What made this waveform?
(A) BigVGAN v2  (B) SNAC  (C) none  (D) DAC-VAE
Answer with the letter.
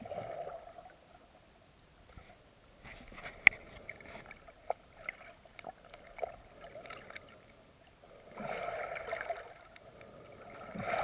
C